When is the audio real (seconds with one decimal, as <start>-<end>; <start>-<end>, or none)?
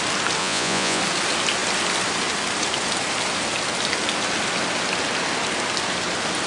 0.0-0.4; 1.0-6.5